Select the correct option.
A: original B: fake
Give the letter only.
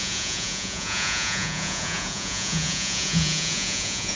B